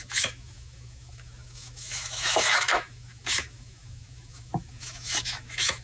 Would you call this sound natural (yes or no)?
no